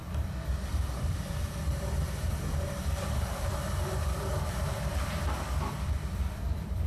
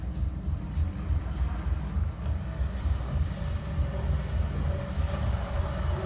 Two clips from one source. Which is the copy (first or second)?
first